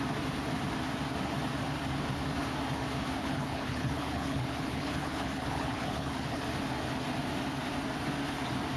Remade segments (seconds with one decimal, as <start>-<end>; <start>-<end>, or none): 3.2-6.4

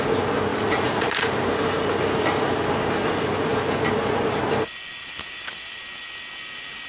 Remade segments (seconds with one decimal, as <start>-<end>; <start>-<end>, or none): 0.5-1.3; 5.0-5.8

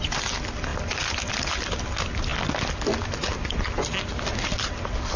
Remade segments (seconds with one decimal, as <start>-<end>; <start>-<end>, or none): none

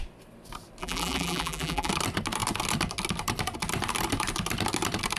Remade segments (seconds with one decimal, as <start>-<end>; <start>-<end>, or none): 0.8-1.9

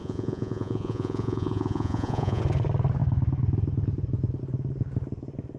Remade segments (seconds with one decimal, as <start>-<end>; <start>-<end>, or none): 0.0-2.4